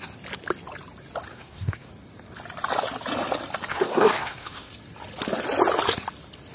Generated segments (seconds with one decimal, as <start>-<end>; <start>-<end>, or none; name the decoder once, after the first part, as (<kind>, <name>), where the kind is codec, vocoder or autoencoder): 1.3-1.9 (codec, SNAC); 3.7-4.7